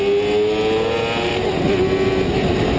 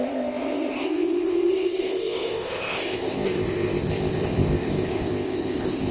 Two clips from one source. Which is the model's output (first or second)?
second